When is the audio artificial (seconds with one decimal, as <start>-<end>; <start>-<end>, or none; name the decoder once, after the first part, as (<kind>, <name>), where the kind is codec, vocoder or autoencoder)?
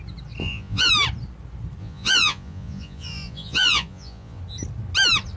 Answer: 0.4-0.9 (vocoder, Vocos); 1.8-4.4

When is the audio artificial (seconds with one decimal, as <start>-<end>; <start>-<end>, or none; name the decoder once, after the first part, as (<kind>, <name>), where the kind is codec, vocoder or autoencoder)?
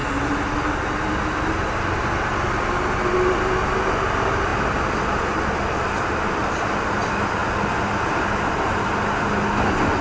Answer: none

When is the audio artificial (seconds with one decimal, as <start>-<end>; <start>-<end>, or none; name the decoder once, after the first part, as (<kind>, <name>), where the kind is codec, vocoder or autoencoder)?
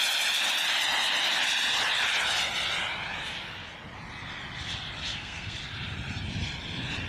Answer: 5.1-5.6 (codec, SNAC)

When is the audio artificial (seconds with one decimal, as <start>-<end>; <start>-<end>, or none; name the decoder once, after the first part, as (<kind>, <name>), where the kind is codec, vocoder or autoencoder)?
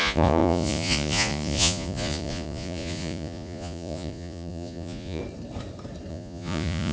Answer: 0.0-5.2 (vocoder, Vocos); 6.1-6.9